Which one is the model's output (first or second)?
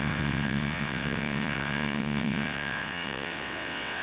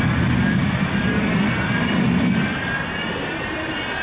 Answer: first